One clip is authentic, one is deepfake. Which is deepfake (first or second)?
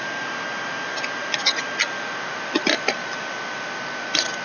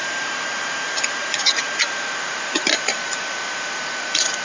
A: second